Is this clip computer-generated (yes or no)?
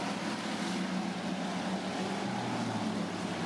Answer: no